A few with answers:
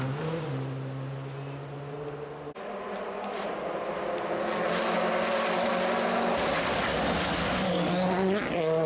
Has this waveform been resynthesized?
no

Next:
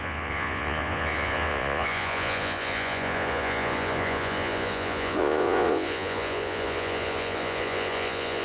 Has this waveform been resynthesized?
yes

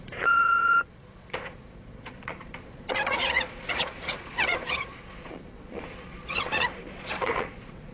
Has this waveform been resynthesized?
yes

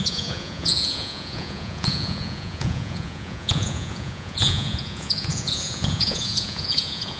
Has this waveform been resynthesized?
yes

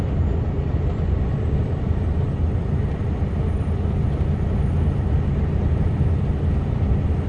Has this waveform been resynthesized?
no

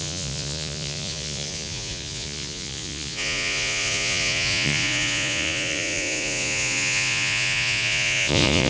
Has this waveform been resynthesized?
yes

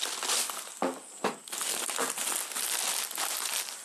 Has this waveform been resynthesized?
no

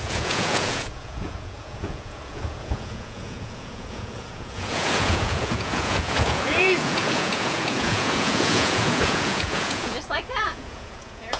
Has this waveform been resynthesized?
yes